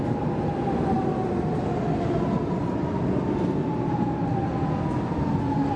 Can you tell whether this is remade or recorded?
recorded